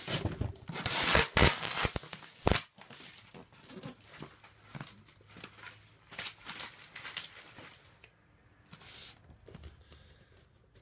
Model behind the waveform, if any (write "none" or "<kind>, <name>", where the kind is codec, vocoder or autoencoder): none